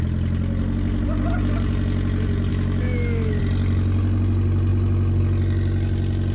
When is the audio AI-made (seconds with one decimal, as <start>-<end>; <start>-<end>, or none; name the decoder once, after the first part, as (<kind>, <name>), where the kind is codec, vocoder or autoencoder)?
2.5-3.4 (autoencoder, DAC-VAE)